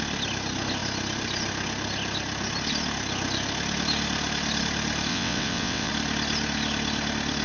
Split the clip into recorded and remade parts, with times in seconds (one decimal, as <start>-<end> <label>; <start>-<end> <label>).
0.0-5.1 recorded; 5.1-5.9 remade; 5.9-7.4 recorded